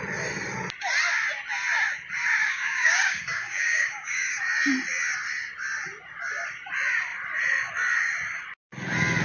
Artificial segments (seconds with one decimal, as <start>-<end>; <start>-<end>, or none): 2.4-4.4